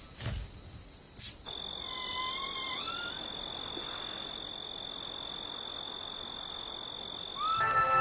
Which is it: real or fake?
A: real